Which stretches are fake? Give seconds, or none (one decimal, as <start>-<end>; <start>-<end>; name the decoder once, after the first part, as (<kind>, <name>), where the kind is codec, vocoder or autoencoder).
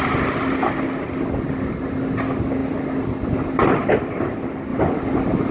none